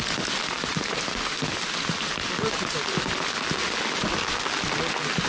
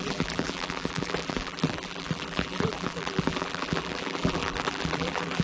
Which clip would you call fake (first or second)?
second